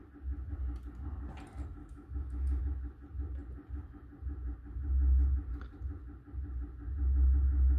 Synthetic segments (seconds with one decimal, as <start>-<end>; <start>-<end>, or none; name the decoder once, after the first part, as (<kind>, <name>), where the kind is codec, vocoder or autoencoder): 1.8-2.6 (autoencoder, DAC-VAE)